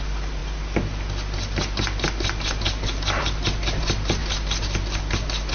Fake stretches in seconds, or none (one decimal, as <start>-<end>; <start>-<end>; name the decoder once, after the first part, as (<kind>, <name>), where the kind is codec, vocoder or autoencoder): none